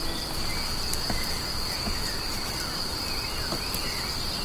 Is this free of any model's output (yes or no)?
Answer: yes